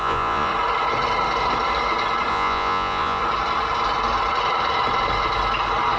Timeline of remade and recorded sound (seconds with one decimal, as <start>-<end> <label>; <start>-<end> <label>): 0.0-0.5 remade; 0.5-2.3 recorded; 2.3-3.2 remade; 3.2-6.0 recorded